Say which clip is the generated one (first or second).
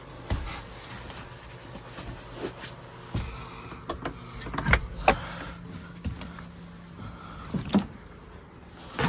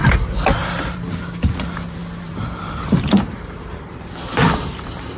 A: second